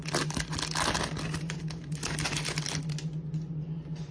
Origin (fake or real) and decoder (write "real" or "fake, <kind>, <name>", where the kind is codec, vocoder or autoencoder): real